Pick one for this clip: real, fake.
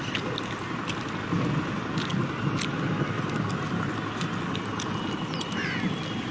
real